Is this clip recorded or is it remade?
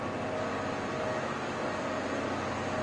recorded